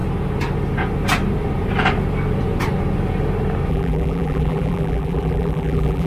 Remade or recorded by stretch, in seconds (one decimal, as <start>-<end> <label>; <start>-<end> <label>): 0.0-3.7 recorded; 3.7-6.1 remade